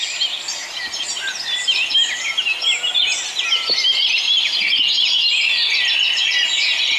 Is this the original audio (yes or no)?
yes